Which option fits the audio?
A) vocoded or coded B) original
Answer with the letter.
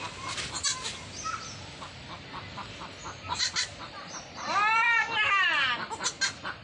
B